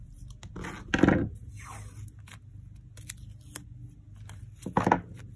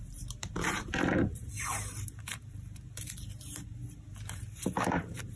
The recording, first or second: first